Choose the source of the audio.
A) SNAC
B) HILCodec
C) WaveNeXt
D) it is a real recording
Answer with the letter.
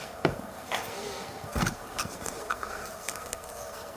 A